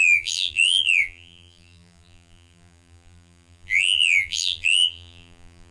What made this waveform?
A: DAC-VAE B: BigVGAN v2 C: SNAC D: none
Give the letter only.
B